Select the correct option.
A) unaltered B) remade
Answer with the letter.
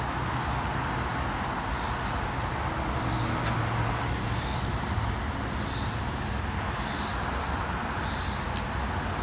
A